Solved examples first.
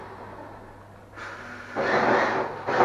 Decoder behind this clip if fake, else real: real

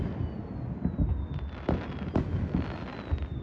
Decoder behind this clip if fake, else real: real